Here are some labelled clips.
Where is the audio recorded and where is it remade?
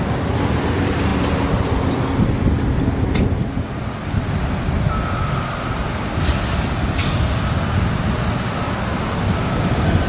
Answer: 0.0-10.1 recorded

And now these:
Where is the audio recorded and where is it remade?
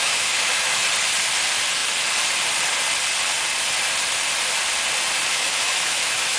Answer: 0.0-0.8 remade; 0.8-5.3 recorded; 5.3-6.4 remade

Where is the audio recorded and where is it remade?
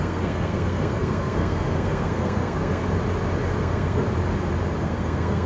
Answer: 0.0-2.8 remade; 2.8-3.6 recorded; 3.6-4.0 remade; 4.0-4.8 recorded; 4.8-5.5 remade